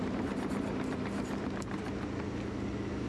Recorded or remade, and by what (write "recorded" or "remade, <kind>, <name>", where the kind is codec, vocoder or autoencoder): recorded